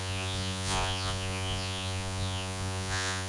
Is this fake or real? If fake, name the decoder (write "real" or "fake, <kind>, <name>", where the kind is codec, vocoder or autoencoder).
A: fake, vocoder, Vocos